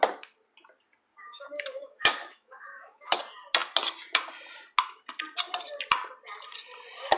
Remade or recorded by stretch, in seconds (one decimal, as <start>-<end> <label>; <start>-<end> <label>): 0.0-1.1 recorded; 1.1-3.2 remade; 3.2-7.2 recorded